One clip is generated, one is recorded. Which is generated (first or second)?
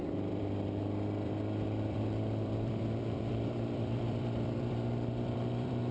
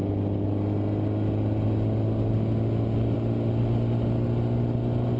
first